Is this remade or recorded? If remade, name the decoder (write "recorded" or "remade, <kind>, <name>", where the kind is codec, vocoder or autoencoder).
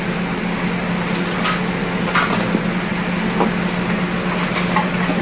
recorded